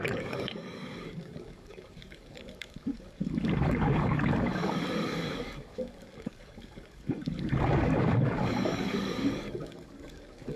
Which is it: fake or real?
fake